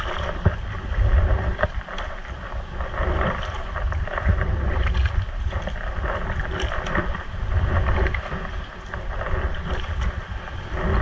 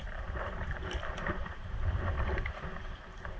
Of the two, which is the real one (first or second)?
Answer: first